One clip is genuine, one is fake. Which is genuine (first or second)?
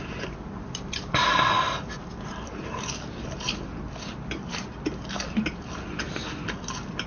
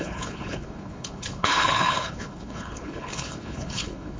first